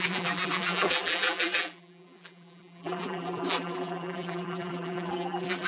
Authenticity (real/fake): fake